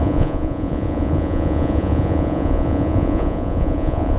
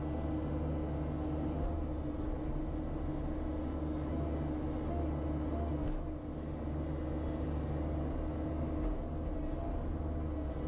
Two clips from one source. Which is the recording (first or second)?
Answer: second